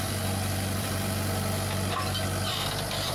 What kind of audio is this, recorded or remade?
remade